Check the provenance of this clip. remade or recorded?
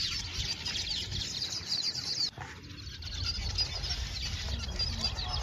recorded